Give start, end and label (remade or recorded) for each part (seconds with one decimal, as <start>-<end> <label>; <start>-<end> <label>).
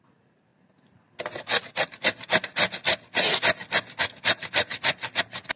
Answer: 0.0-0.5 remade; 0.5-1.4 recorded; 1.4-1.9 remade; 1.9-5.6 recorded